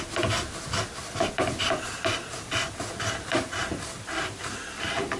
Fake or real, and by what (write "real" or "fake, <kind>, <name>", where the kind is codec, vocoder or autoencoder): fake, vocoder, BigVGAN v2